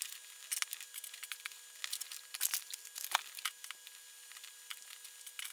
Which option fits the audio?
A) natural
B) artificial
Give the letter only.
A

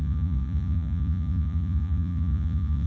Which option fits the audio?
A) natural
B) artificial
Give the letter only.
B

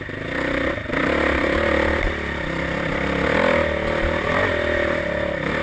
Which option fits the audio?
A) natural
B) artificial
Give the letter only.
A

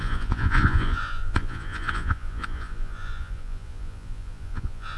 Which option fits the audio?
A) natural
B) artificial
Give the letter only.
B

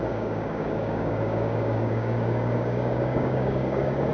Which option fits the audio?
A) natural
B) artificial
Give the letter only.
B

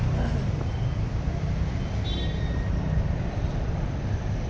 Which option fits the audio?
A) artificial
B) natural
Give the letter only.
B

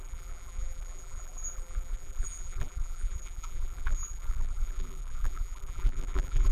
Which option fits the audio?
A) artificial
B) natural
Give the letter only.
A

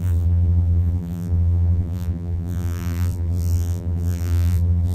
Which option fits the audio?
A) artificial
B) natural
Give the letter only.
A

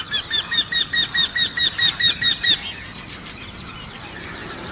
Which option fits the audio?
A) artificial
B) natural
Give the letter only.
A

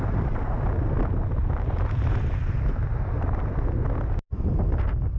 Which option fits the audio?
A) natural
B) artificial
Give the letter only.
A